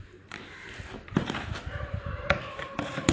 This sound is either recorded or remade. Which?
remade